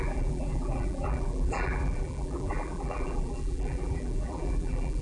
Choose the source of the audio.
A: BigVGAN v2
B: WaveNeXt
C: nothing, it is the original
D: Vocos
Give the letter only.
A